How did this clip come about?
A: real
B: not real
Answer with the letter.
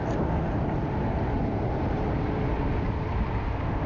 A